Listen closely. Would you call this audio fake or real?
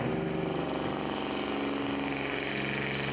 real